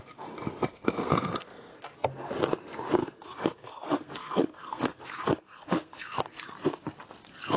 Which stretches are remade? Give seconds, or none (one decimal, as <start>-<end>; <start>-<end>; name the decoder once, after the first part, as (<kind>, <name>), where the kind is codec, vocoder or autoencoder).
0.7-1.9 (codec, SNAC); 3.0-6.2